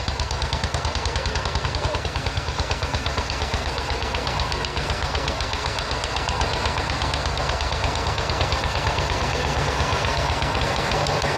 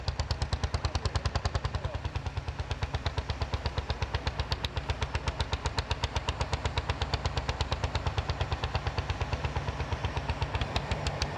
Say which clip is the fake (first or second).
first